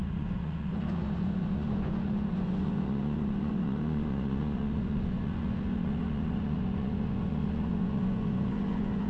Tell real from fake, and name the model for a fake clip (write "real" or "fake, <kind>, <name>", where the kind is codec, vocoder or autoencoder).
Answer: fake, vocoder, Vocos